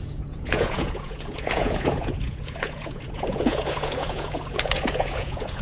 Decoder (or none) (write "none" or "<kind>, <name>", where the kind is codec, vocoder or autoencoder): vocoder, Vocos